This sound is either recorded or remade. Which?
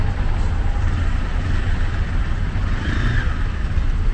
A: recorded